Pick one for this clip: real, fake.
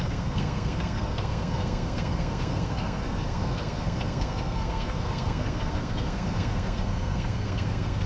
fake